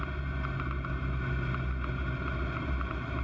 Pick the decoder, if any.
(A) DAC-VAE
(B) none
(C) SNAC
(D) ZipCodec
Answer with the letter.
B